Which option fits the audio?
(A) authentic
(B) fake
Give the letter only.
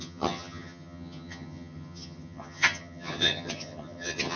B